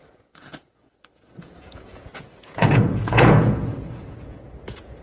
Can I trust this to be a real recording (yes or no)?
no